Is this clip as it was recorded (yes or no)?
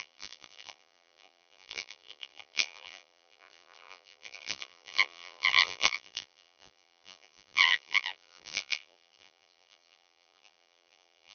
no